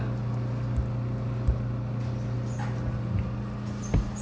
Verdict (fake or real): real